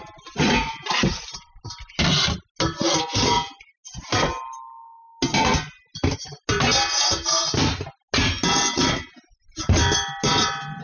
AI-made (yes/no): no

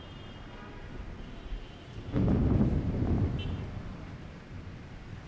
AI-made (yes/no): no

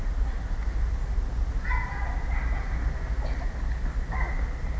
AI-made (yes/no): no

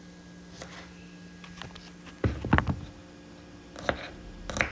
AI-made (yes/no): no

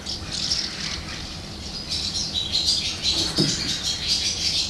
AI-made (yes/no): no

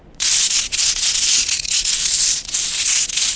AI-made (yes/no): yes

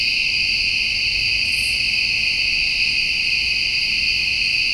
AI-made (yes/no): no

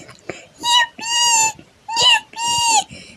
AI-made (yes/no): no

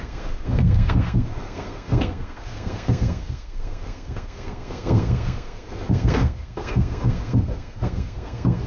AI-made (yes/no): yes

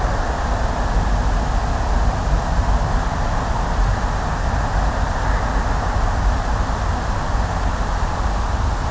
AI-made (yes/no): no